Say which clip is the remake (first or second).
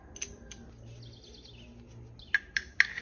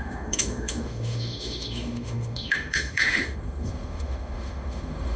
second